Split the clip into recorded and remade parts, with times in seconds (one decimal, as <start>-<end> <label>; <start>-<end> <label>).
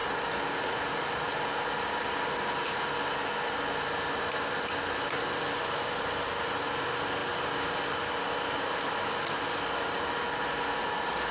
0.0-11.3 recorded